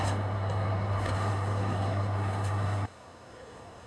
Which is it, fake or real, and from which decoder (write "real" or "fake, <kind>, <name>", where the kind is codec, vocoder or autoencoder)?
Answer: fake, codec, SNAC